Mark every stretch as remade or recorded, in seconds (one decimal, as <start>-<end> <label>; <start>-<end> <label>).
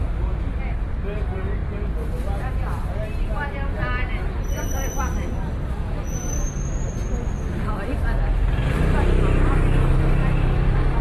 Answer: 0.0-1.6 recorded; 1.6-2.9 remade; 2.9-11.0 recorded